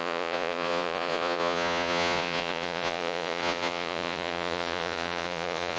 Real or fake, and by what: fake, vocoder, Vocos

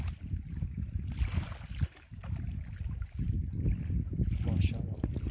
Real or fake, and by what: real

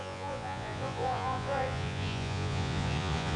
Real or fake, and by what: fake, vocoder, Vocos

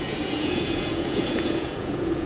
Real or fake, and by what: fake, vocoder, Vocos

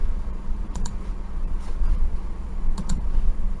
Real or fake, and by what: fake, vocoder, Vocos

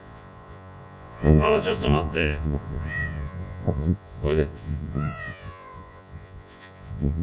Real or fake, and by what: fake, vocoder, Vocos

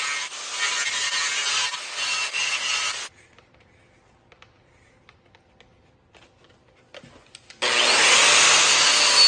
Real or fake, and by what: real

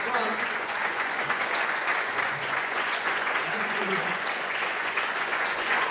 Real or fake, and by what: fake, vocoder, Vocos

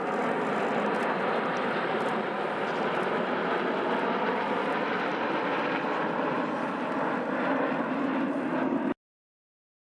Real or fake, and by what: real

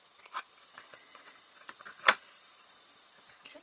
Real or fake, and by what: fake, vocoder, Vocos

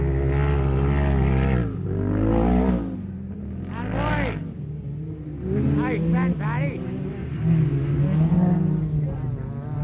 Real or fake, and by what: real